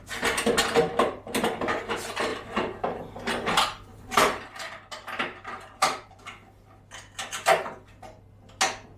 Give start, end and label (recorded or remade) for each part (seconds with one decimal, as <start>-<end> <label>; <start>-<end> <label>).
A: 0.0-2.3 recorded; 2.3-3.0 remade; 3.0-3.9 recorded; 3.9-4.7 remade; 4.7-5.2 recorded; 5.2-6.2 remade; 6.2-9.0 recorded